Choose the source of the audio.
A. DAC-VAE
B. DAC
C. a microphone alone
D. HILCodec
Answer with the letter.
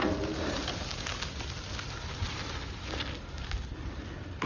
C